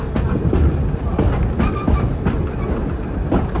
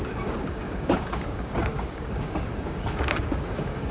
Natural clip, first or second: first